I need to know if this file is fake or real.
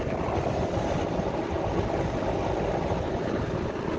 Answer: real